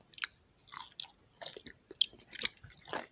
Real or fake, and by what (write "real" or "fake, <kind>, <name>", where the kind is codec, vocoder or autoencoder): real